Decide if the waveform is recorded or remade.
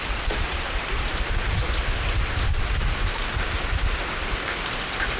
recorded